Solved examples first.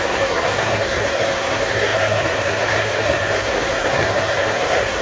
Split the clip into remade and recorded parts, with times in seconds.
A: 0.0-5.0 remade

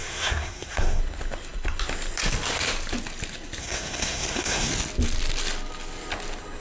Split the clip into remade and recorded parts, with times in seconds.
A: 0.0-1.0 remade; 1.0-3.6 recorded; 3.6-4.7 remade; 4.7-6.6 recorded

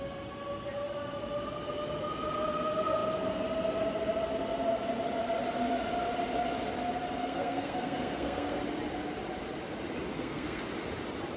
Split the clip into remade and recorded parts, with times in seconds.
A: 0.0-7.2 recorded; 7.2-8.6 remade; 8.6-10.1 recorded; 10.1-10.6 remade; 10.6-11.4 recorded

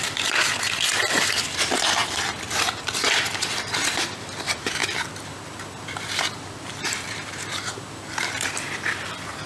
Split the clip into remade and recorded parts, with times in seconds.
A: 0.0-9.5 remade

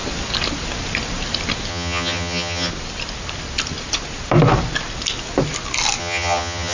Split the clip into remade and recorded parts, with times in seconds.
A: 0.0-1.7 recorded; 1.7-2.7 remade; 2.7-6.0 recorded; 6.0-6.7 remade

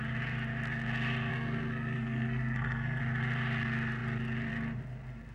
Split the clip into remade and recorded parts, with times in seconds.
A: 0.0-1.3 recorded; 1.3-3.0 remade; 3.0-5.3 recorded